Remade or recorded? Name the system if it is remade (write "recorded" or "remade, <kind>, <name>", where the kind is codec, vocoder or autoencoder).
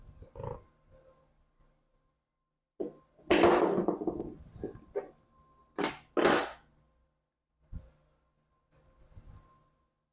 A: recorded